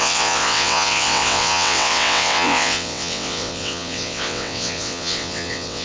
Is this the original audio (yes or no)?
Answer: no